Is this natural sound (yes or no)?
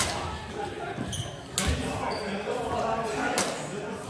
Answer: yes